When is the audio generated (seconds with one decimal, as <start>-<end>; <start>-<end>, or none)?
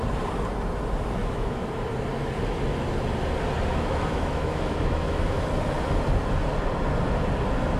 1.2-1.7; 3.7-5.5